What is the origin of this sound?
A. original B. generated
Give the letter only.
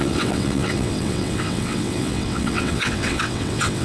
B